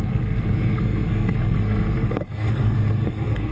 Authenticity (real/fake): fake